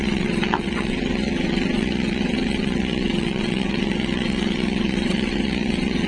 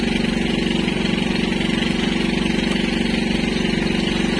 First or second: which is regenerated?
first